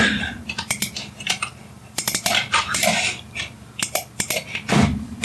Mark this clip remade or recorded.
remade